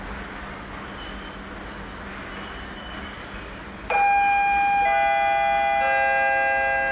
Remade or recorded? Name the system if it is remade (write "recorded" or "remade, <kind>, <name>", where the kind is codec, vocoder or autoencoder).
recorded